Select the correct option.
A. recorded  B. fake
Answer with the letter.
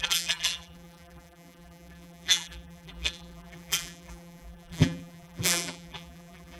B